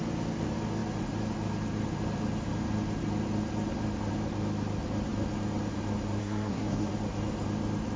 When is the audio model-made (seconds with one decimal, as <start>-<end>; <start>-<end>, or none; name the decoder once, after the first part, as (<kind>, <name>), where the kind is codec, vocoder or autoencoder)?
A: 6.2-6.9 (codec, SNAC)